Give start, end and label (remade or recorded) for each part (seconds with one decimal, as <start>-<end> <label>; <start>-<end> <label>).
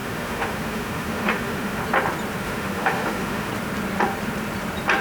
0.0-1.8 remade; 1.8-2.4 recorded; 2.4-3.5 remade; 3.5-5.0 recorded